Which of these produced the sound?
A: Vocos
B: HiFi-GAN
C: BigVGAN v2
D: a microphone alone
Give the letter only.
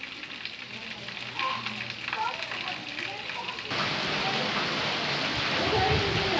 D